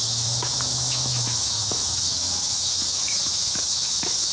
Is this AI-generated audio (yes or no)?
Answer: yes